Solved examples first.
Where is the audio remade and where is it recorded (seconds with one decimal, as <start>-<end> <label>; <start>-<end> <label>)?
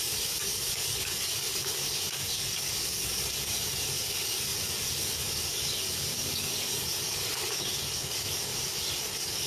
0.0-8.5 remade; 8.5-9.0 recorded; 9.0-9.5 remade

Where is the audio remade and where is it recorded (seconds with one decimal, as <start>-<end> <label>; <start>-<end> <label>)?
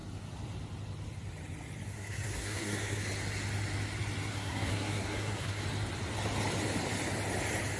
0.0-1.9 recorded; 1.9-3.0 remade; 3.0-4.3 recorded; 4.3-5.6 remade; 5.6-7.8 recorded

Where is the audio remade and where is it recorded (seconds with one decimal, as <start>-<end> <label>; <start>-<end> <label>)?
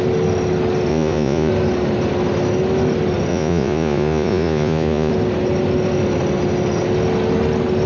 0.0-0.9 recorded; 0.9-1.5 remade; 1.5-3.3 recorded; 3.3-5.1 remade; 5.1-7.9 recorded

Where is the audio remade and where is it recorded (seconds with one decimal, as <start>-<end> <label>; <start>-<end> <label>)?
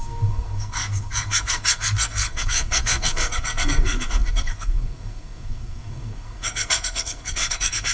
0.0-7.9 remade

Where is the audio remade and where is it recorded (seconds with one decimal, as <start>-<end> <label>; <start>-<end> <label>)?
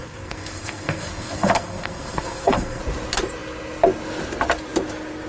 0.0-2.8 remade; 2.8-5.3 recorded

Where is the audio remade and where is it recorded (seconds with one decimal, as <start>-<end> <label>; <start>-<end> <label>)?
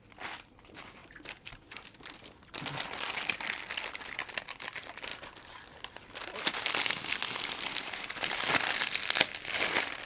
0.0-1.0 recorded; 1.0-3.5 remade; 3.5-10.1 recorded